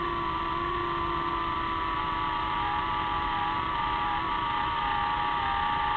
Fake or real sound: real